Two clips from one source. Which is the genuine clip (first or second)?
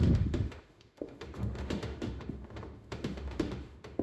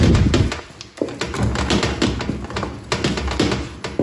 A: second